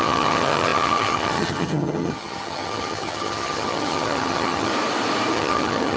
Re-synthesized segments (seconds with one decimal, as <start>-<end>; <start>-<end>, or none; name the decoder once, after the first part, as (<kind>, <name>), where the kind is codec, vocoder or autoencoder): 0.0-4.7 (vocoder, HiFi-GAN); 5.3-6.0